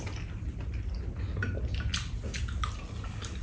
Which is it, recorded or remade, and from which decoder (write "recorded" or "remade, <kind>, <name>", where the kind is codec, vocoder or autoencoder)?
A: recorded